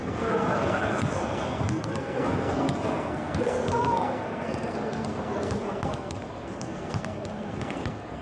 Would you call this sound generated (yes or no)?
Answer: yes